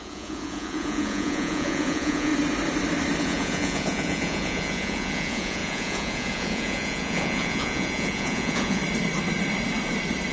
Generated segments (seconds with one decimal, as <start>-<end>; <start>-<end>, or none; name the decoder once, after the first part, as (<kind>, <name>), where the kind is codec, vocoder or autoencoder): 0.0-2.3 (vocoder, Vocos); 3.2-8.8

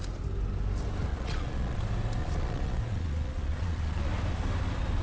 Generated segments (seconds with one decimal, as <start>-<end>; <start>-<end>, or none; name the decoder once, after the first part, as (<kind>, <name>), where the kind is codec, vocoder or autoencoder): 1.1-1.8 (vocoder, Vocos); 2.2-4.1

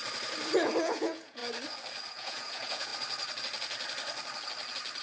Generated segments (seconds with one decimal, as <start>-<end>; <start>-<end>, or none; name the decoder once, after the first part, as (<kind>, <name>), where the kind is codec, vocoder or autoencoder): 0.8-1.4 (vocoder, Vocos); 2.1-2.9

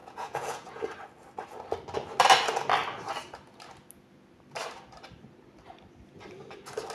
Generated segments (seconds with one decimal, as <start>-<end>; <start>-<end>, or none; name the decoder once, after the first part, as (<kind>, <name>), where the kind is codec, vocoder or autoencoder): 0.0-0.8 (vocoder, Vocos)

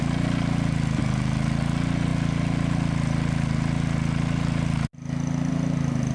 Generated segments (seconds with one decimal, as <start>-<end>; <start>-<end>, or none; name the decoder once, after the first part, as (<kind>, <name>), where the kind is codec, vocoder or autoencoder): none

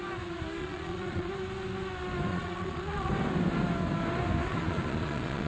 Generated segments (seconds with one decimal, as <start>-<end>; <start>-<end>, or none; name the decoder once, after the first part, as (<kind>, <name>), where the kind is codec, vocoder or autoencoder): 0.6-1.3 (vocoder, Vocos); 2.3-3.1; 4.5-5.5